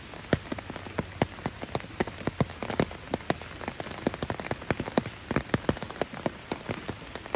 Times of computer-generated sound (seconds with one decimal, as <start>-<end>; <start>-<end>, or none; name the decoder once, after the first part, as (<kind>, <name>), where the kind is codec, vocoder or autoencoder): none